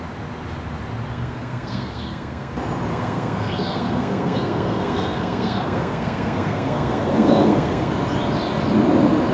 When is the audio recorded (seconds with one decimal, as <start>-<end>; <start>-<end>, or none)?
0.0-1.1; 2.5-2.9; 7.9-9.3